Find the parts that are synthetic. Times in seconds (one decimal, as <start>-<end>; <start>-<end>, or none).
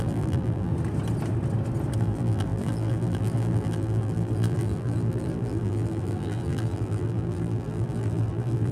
0.0-0.7; 2.0-8.7